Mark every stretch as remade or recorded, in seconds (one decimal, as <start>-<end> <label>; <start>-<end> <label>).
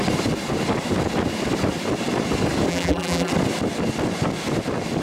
0.0-2.7 recorded; 2.7-3.3 remade; 3.3-5.0 recorded